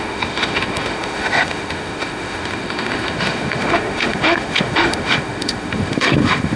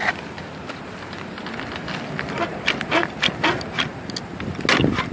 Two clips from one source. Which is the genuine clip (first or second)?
second